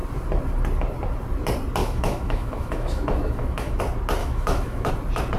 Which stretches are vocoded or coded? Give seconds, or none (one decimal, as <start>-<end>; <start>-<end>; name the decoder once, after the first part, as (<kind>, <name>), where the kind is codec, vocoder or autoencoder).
1.8-3.8 (autoencoder, DAC-VAE); 4.2-4.9

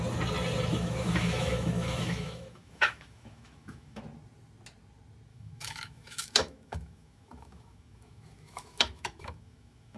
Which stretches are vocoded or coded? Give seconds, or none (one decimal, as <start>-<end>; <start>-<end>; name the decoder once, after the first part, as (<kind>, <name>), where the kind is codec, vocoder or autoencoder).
0.7-4.0 (autoencoder, DAC-VAE); 5.3-10.0

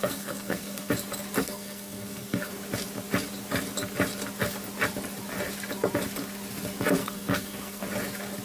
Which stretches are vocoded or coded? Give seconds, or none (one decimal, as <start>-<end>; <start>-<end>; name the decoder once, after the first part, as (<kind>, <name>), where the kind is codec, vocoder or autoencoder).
0.0-0.9 (codec, SNAC); 1.4-2.5; 7.0-7.8

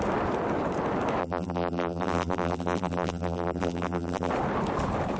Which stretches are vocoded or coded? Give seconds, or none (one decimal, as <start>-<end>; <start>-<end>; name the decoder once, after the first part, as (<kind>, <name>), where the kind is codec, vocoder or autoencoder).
1.2-4.3 (vocoder, BigVGAN v2)

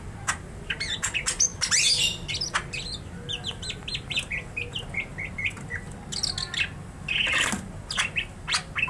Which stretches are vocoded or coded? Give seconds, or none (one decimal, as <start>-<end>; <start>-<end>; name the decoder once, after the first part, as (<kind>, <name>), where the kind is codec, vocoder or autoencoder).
none

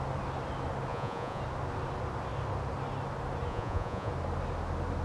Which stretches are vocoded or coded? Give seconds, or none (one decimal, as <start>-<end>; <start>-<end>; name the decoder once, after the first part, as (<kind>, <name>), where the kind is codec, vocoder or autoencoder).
0.9-1.4 (vocoder, Vocos); 3.5-4.1

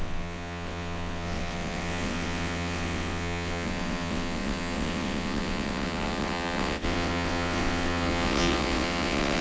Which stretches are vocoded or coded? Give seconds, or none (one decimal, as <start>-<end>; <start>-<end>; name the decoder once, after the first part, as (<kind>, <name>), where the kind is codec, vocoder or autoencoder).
0.0-9.4 (vocoder, WaveNeXt)